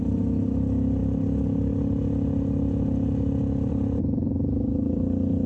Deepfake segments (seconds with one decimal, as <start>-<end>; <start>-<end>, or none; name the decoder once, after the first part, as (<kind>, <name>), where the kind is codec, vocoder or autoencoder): none

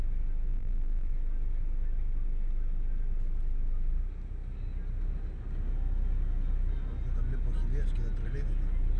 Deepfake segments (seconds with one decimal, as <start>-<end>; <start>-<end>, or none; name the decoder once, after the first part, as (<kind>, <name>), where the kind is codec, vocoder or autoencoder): 0.5-1.1 (vocoder, BigVGAN v2)

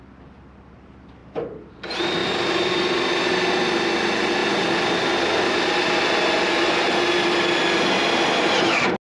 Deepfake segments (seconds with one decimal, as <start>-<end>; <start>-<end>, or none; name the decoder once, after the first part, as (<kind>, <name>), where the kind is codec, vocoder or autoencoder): 2.2-3.3 (vocoder, BigVGAN v2)

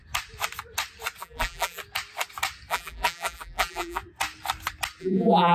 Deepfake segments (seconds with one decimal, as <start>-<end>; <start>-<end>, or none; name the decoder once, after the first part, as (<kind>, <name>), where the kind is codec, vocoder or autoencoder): 1.2-1.8 (vocoder, BigVGAN v2); 2.7-4.0; 5.0-5.5

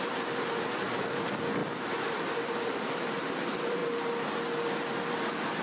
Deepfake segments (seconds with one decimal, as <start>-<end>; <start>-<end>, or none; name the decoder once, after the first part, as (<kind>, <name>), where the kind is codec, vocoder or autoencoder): 0.0-3.8 (vocoder, BigVGAN v2); 4.7-5.6

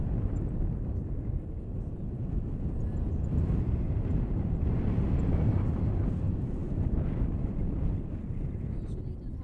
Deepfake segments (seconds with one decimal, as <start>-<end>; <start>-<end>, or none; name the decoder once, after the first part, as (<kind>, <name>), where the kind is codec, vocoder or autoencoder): none